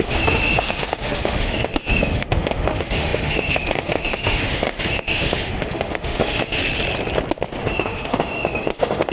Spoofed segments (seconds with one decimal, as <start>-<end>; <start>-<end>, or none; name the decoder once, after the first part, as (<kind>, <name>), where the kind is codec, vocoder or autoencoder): 0.0-6.6 (autoencoder, DAC-VAE); 7.6-9.1